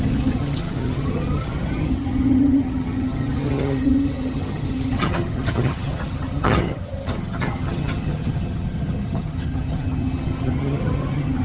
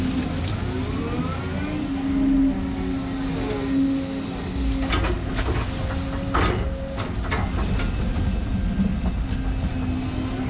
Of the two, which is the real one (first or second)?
second